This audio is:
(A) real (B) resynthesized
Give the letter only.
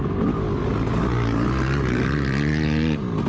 A